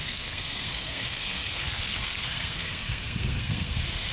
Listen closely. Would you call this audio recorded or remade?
remade